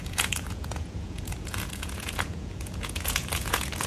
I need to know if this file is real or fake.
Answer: fake